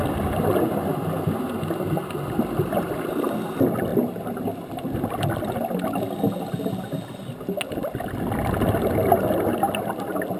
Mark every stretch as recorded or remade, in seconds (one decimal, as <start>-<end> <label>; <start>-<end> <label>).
0.0-3.9 recorded; 3.9-4.6 remade; 4.6-10.4 recorded